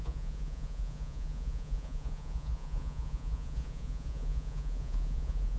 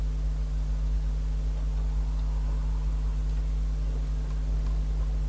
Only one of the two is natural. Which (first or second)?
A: second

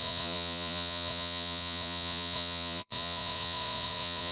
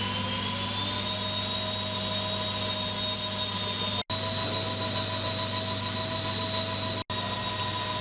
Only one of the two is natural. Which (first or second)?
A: second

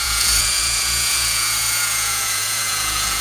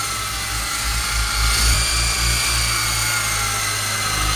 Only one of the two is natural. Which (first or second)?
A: second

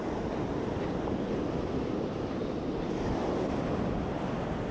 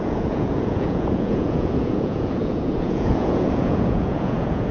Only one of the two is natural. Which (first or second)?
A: first